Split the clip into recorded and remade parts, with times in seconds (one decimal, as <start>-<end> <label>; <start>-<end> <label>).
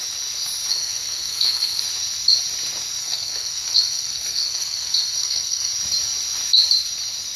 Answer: 0.0-0.7 recorded; 0.7-1.8 remade; 1.8-3.0 recorded; 3.0-5.7 remade; 5.7-7.4 recorded